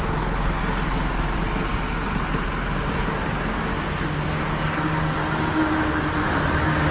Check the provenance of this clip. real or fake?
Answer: real